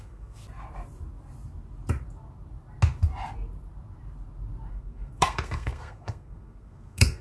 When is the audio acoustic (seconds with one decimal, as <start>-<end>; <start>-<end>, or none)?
0.4-4.7